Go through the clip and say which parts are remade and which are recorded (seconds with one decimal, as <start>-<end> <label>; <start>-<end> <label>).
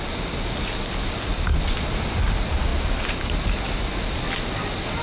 0.0-5.0 recorded